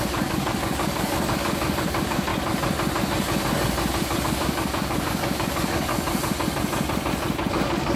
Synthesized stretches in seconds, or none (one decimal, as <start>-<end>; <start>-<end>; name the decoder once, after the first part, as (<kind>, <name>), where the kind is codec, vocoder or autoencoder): 0.0-2.3 (codec, DAC); 4.2-5.9; 7.5-8.0